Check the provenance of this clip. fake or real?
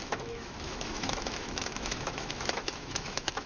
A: fake